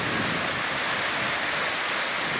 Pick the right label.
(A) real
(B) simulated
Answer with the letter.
A